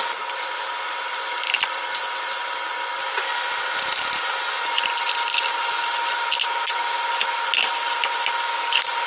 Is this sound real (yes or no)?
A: yes